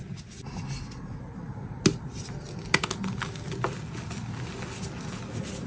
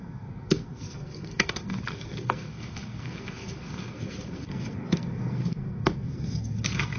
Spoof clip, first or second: second